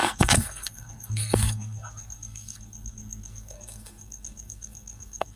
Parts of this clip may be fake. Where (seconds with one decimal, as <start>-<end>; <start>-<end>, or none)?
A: 0.0-5.4